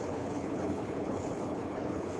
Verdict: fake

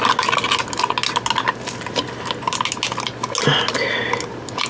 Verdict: real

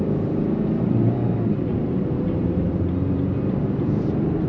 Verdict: fake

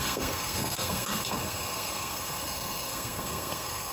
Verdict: fake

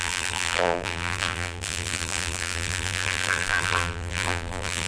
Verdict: fake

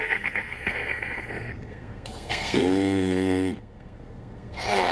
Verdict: fake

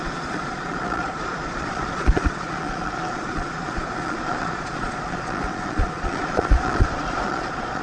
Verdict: fake